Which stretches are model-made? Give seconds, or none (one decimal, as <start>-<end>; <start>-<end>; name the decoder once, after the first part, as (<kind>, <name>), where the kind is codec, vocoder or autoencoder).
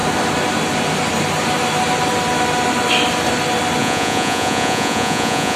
3.8-5.6 (vocoder, Vocos)